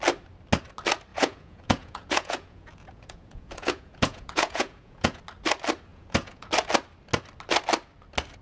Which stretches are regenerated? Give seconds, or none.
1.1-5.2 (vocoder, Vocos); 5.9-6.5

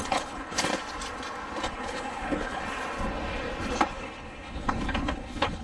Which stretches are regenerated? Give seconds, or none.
0.0-0.7 (codec, HILCodec); 1.7-2.6; 3.9-5.6